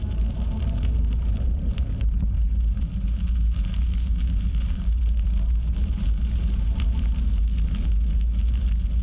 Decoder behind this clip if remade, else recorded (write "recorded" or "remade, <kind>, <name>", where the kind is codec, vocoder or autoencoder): recorded